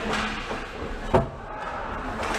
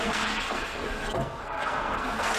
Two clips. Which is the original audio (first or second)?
first